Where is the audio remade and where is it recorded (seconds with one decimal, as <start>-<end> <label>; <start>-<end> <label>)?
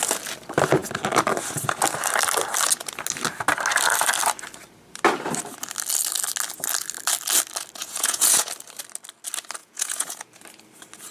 0.0-7.8 recorded; 7.8-8.5 remade; 8.5-9.6 recorded; 9.6-10.3 remade; 10.3-11.1 recorded